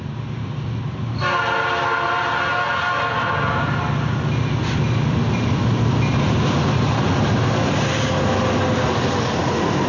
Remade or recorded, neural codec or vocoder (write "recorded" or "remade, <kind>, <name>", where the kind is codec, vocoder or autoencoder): recorded